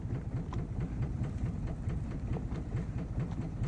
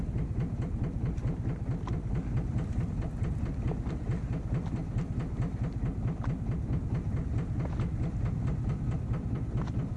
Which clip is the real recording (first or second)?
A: second